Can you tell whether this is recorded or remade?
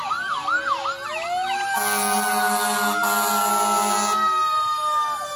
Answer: recorded